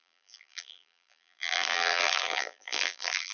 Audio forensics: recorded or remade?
remade